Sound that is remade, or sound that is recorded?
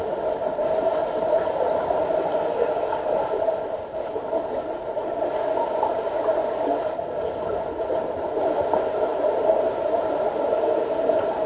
recorded